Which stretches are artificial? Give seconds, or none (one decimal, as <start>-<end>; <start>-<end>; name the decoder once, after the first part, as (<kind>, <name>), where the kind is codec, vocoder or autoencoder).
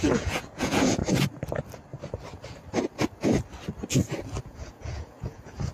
0.0-1.0 (vocoder, Vocos); 4.4-5.7